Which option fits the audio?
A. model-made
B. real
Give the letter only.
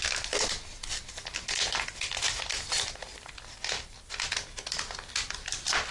B